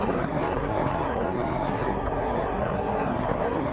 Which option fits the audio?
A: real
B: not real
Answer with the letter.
B